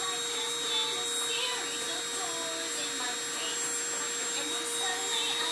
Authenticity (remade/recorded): recorded